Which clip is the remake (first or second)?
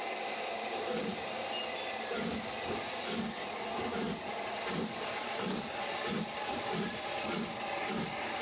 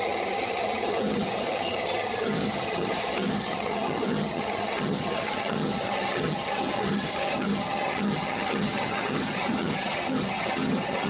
second